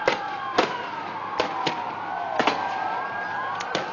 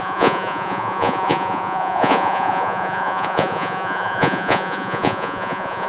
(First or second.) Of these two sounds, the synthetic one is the second